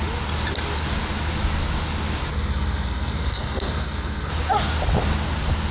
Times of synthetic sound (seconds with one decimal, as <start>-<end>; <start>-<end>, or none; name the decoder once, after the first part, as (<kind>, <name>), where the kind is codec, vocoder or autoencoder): 2.3-4.3 (codec, SNAC)